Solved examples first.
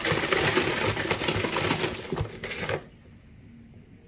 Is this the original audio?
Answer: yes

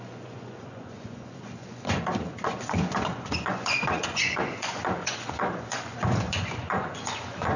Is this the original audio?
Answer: no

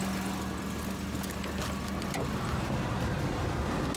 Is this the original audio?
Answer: yes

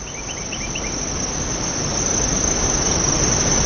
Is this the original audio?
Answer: yes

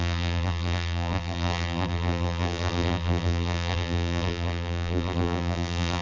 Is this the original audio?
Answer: no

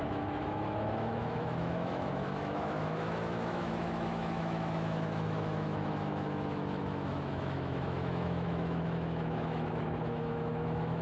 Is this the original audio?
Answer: no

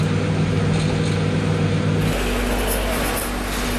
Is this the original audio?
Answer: yes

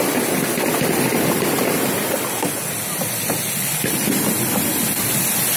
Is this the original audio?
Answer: yes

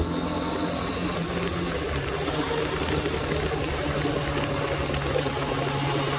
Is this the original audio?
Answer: yes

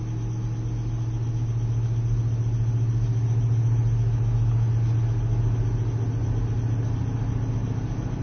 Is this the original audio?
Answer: yes